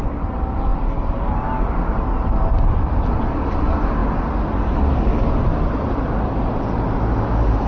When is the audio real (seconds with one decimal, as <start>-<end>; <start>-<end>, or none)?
0.0-7.7